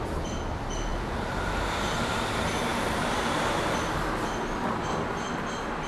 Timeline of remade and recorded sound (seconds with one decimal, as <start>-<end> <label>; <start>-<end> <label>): 0.0-5.9 recorded